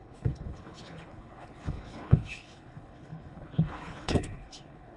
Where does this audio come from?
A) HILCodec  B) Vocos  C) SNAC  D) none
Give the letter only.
A